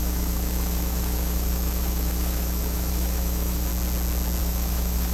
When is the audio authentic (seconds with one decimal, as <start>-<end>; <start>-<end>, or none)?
3.7-4.4